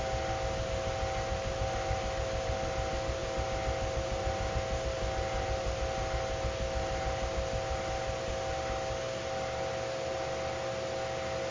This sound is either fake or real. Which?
real